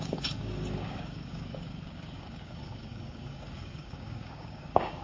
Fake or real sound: fake